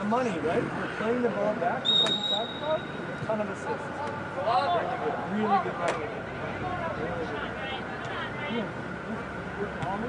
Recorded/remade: recorded